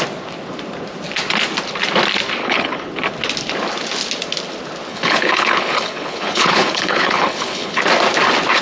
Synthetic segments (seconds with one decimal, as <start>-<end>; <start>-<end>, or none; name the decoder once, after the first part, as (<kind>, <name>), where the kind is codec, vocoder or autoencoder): 2.4-2.9 (codec, HILCodec); 4.9-7.8